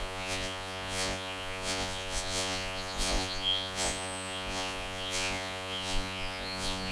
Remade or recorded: remade